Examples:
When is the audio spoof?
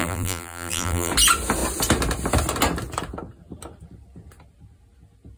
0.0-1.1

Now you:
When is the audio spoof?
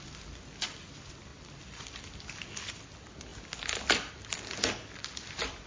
1.3-2.2